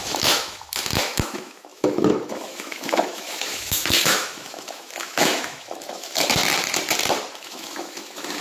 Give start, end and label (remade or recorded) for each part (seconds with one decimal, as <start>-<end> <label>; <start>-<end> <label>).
0.0-6.4 remade; 6.4-7.3 recorded; 7.3-8.4 remade